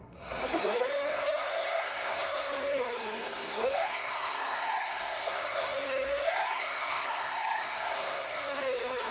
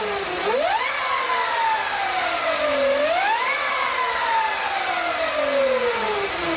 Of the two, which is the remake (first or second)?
first